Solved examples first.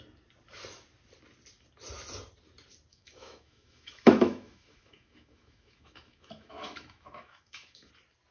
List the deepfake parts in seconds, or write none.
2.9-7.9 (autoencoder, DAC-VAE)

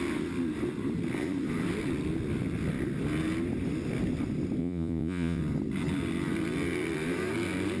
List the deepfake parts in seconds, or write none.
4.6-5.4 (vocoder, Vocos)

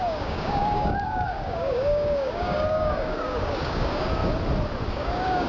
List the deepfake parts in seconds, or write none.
0.0-4.2 (codec, DAC); 4.9-5.5

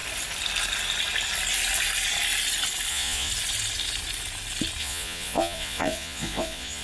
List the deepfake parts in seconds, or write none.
2.9-3.3 (vocoder, Vocos); 4.8-6.8